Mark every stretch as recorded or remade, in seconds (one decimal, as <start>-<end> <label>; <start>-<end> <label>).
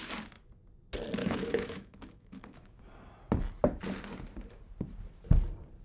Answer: 0.0-1.2 recorded; 1.2-2.8 remade; 2.8-5.8 recorded